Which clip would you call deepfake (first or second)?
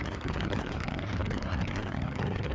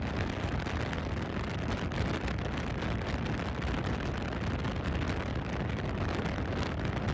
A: first